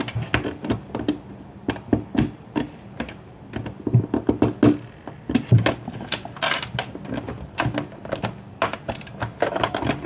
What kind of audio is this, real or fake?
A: real